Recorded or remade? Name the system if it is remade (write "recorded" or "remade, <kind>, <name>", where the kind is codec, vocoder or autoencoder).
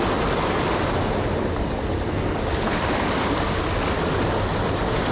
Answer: recorded